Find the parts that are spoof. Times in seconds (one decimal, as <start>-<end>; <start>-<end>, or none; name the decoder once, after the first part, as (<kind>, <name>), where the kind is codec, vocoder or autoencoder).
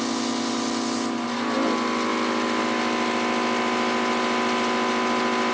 none